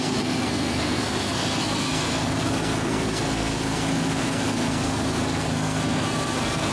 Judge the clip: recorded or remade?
remade